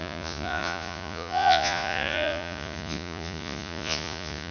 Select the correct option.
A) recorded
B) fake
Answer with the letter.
B